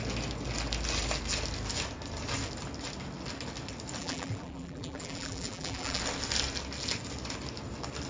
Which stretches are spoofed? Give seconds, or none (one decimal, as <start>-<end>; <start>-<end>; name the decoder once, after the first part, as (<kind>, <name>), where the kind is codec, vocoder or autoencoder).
4.0-6.0 (vocoder, BigVGAN v2)